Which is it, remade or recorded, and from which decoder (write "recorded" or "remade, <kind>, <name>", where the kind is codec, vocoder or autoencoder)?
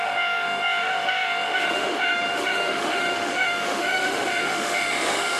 remade, autoencoder, DAC-VAE